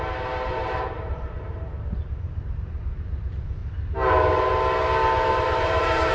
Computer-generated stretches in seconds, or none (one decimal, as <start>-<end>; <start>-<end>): 0.0-3.6; 5.3-6.1